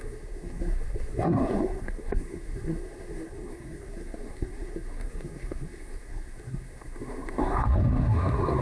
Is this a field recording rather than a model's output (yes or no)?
no